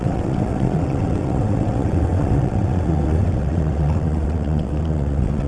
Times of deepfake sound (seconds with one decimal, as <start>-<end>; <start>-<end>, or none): 0.0-5.5